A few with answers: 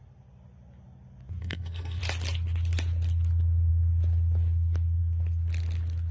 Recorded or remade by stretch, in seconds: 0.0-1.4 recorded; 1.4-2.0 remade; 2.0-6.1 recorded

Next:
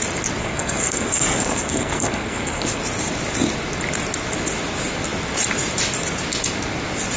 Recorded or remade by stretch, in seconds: 0.0-0.4 recorded; 0.4-2.8 remade; 2.8-7.2 recorded

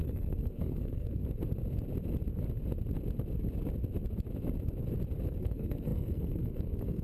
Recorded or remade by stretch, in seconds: 0.0-1.2 remade; 1.2-5.4 recorded; 5.4-7.0 remade

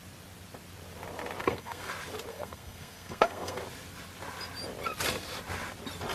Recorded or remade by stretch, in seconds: 0.0-1.4 recorded; 1.4-1.9 remade; 1.9-2.3 recorded; 2.3-3.6 remade; 3.6-6.1 recorded

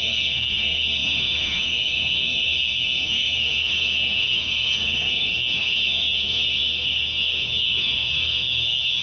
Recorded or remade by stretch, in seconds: 0.0-9.0 remade